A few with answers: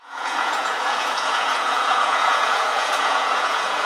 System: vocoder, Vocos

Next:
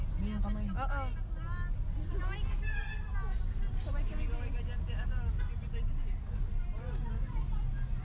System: none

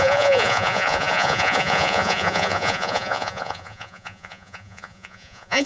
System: vocoder, Vocos